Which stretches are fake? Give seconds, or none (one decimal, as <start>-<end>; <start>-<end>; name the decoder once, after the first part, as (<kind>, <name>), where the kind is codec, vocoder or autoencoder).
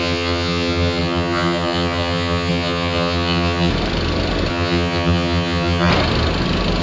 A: 0.0-3.7 (vocoder, HiFi-GAN); 4.5-5.9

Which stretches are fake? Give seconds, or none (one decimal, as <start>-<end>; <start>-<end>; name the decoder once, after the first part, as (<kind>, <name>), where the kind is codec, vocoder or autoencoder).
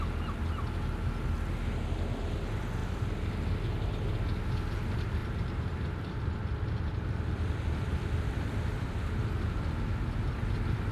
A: 2.8-3.5 (vocoder, BigVGAN v2); 5.2-9.0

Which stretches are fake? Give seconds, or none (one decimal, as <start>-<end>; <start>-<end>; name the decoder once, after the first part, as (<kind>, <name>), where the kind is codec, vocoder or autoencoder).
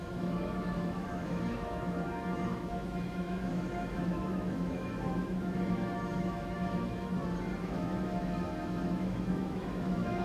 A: 0.0-7.1 (autoencoder, DAC-VAE); 7.6-10.2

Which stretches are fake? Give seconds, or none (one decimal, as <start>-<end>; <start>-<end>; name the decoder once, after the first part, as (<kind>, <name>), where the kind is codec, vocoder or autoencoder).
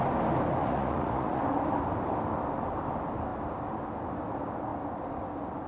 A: 0.6-1.4 (vocoder, Vocos)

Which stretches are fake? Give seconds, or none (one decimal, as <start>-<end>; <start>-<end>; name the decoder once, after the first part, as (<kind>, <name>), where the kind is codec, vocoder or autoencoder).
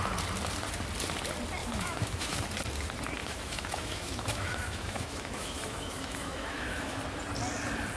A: 1.6-2.4 (autoencoder, DAC-VAE); 3.2-7.0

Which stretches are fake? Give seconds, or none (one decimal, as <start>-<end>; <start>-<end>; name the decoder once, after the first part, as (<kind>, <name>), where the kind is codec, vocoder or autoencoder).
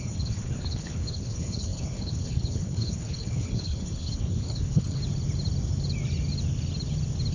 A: 0.0-5.0 (codec, HILCodec)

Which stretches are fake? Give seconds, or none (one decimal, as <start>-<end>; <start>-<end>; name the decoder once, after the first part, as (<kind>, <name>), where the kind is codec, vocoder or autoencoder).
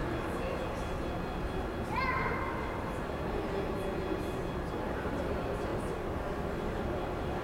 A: none